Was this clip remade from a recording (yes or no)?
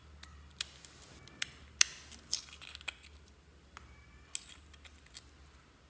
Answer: no